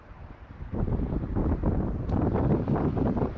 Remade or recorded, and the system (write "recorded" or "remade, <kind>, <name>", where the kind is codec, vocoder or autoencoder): recorded